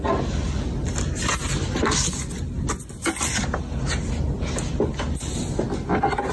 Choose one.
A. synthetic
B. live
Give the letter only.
B